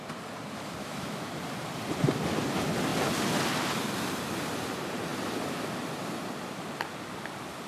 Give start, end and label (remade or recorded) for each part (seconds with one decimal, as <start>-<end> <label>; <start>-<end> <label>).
0.0-0.8 recorded; 0.8-1.3 remade; 1.3-7.7 recorded